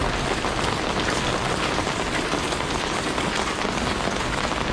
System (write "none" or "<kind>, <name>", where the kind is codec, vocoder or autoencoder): none